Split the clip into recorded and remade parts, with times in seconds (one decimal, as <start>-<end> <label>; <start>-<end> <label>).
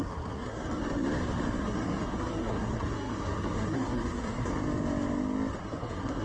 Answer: 0.0-0.8 remade; 0.8-1.6 recorded; 1.6-4.5 remade; 4.5-5.6 recorded; 5.6-6.2 remade